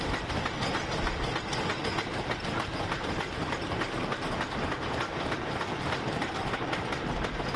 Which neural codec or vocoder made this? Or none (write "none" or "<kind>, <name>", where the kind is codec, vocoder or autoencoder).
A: none